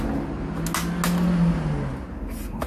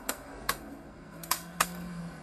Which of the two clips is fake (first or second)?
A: second